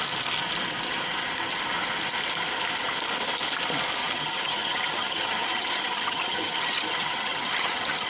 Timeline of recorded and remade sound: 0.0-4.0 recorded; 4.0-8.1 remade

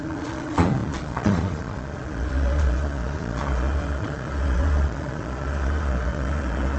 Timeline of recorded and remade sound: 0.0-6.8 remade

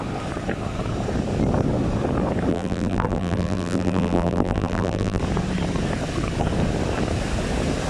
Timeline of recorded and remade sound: 0.0-2.5 recorded; 2.5-5.2 remade; 5.2-7.9 recorded

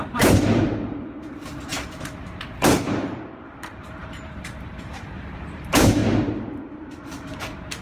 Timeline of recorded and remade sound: 0.0-6.0 remade; 6.0-7.0 recorded; 7.0-7.8 remade